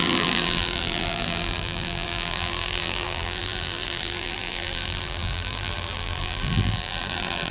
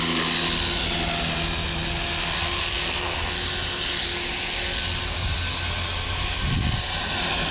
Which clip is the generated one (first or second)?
first